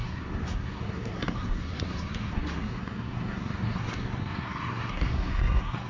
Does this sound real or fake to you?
fake